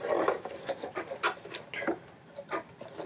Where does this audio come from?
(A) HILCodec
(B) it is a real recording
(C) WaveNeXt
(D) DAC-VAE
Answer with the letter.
B